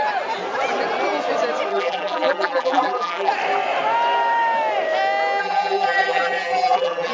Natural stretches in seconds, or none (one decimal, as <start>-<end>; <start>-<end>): 0.0-1.7; 3.3-5.4